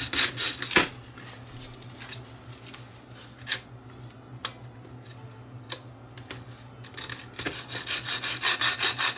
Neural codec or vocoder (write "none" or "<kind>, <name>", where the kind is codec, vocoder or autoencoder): none